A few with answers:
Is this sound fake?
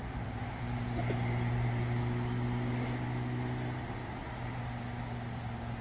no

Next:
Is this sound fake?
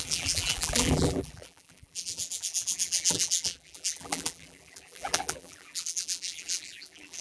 yes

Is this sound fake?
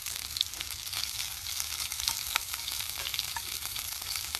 yes